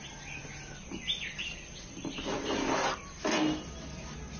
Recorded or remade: recorded